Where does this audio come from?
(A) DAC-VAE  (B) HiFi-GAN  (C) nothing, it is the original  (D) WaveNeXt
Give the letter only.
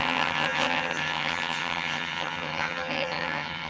B